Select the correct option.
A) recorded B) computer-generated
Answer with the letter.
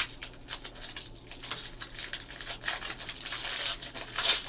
A